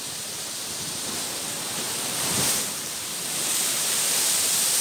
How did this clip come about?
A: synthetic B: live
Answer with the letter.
A